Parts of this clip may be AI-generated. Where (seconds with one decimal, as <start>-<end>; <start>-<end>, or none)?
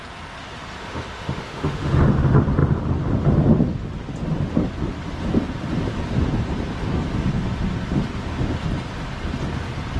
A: 0.8-2.0